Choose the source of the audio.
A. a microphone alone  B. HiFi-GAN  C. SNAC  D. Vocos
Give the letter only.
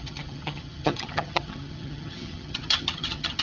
B